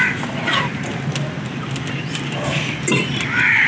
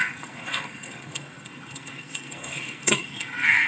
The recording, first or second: first